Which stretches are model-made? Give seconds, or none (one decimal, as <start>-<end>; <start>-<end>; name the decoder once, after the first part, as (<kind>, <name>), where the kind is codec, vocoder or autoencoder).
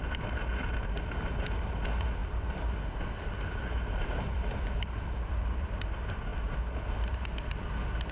2.2-5.7 (vocoder, BigVGAN v2)